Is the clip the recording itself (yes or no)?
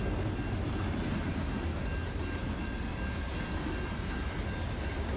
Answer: yes